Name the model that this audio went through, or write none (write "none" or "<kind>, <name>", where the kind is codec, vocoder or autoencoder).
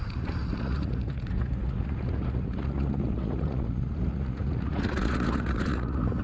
vocoder, Vocos